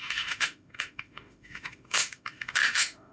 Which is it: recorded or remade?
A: remade